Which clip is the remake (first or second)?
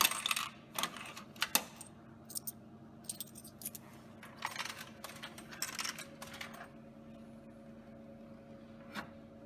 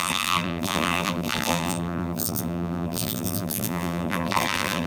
second